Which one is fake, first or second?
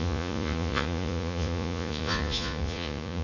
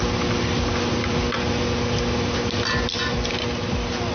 first